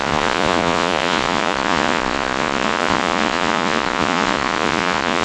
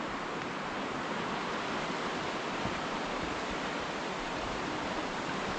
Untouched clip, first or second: second